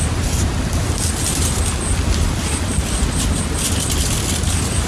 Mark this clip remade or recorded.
recorded